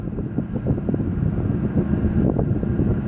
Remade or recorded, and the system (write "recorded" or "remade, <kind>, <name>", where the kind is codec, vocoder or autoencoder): recorded